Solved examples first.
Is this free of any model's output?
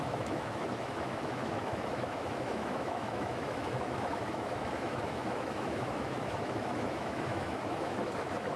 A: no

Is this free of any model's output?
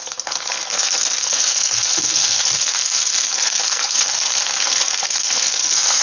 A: no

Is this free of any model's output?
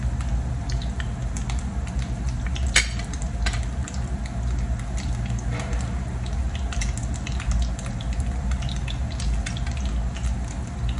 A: yes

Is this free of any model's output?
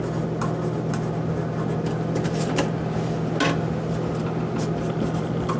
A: yes